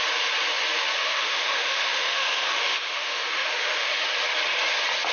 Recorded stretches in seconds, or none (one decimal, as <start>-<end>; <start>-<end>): 0.0-1.0; 4.1-5.1